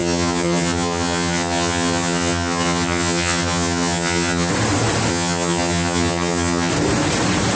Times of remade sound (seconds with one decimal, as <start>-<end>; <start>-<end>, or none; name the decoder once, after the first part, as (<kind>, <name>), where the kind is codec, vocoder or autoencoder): 0.0-4.5 (vocoder, HiFi-GAN); 5.1-6.7